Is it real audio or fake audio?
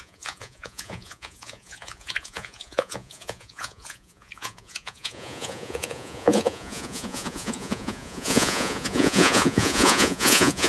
fake